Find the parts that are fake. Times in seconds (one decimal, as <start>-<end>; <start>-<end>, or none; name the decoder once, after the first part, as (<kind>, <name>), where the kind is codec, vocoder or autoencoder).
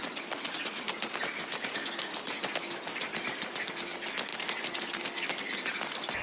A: none